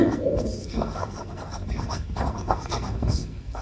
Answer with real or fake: fake